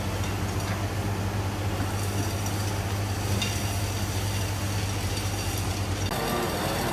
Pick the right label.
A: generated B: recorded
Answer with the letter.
B